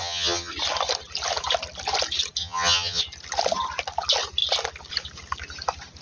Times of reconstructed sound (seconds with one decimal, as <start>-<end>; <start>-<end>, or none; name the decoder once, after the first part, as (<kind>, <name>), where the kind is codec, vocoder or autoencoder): 0.0-0.5 (vocoder, HiFi-GAN); 2.4-3.0